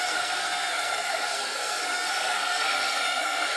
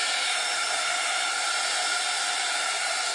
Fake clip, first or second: first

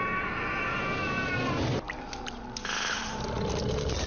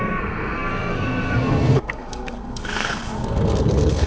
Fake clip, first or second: second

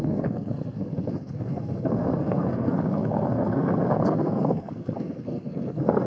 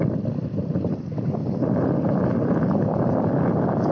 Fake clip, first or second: first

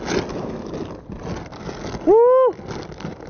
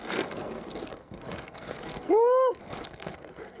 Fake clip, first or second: second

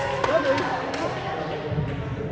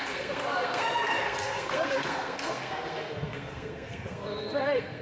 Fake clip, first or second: second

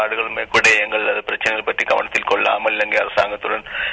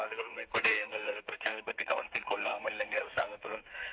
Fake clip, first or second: second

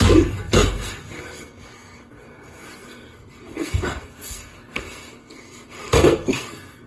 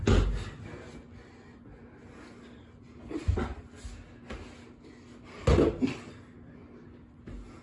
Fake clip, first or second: first